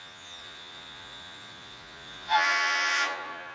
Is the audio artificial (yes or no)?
yes